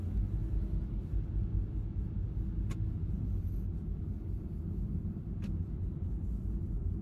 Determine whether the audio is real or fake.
real